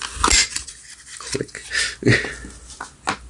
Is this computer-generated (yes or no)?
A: no